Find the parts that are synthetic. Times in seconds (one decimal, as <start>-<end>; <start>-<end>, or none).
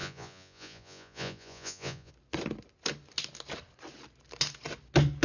0.0-2.1